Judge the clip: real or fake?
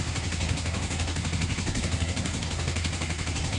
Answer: fake